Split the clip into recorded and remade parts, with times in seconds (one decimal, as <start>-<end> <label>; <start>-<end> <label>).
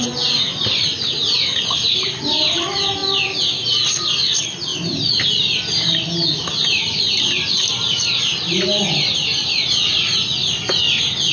0.0-11.3 recorded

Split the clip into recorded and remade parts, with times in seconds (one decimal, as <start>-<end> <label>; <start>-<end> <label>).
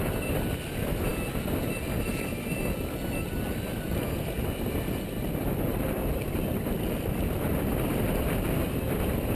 0.0-5.7 recorded; 5.7-8.2 remade; 8.2-9.3 recorded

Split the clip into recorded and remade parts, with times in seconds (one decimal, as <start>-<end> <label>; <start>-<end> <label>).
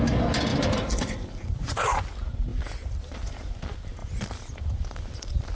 0.0-0.5 recorded; 0.5-2.1 remade; 2.1-2.5 recorded; 2.5-3.5 remade; 3.5-4.0 recorded; 4.0-5.5 remade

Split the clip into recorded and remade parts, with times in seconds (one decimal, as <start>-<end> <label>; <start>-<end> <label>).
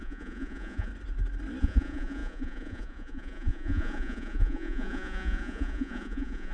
0.0-0.9 remade; 0.9-1.6 recorded; 1.6-6.5 remade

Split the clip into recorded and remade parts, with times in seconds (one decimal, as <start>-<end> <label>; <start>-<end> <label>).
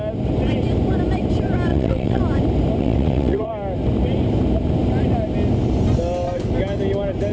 0.0-1.7 recorded; 1.7-2.2 remade; 2.2-2.8 recorded; 2.8-3.5 remade; 3.5-7.3 recorded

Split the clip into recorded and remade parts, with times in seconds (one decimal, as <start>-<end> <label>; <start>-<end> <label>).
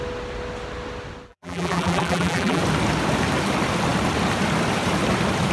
0.0-1.3 recorded; 1.3-2.6 remade; 2.6-5.5 recorded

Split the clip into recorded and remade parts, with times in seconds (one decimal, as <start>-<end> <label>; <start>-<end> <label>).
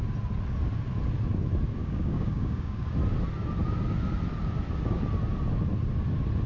0.0-1.8 recorded; 1.8-2.9 remade; 2.9-6.5 recorded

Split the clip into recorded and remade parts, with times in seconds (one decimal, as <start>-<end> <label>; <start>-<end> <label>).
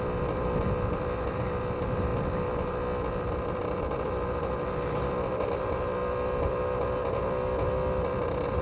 0.0-8.6 recorded